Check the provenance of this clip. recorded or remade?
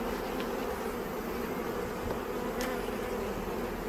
recorded